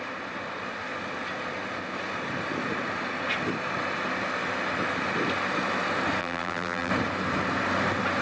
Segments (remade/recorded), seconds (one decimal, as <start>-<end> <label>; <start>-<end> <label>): 0.0-6.2 recorded; 6.2-6.9 remade; 6.9-8.2 recorded